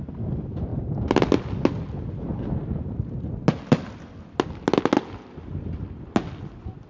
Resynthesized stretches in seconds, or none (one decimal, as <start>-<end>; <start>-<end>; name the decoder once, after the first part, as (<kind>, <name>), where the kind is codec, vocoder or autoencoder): none